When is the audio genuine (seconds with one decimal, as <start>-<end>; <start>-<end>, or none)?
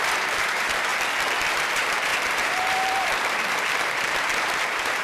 0.9-1.5